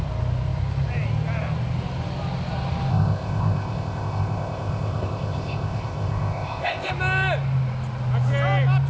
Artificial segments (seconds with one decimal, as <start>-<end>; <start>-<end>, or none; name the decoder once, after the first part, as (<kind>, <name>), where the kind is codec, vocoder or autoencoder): 2.9-6.9 (codec, ZipCodec)

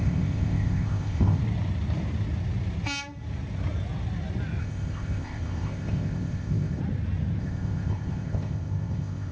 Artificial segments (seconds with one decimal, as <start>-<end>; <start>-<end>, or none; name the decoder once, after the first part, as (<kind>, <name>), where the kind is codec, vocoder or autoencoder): 0.0-1.4 (codec, ZipCodec); 4.6-6.8; 7.4-9.3